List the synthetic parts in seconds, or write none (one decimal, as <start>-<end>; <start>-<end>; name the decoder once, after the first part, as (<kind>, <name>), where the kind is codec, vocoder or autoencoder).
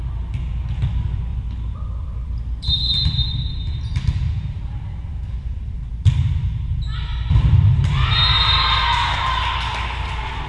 1.3-5.8 (vocoder, BigVGAN v2); 7.1-7.9